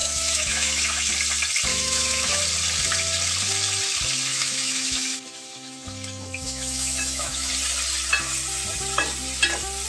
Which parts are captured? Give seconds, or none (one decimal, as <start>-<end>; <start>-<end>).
1.1-1.7; 2.4-4.3; 7.5-9.9